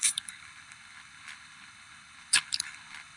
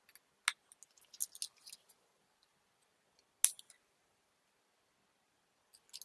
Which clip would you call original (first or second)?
second